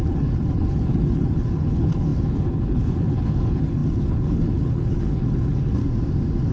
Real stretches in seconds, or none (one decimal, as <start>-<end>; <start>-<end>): 5.8-6.5